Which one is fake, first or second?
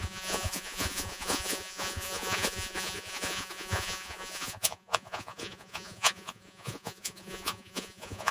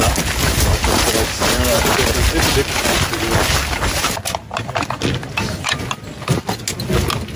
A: first